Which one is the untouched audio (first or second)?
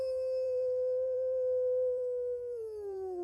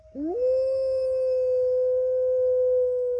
second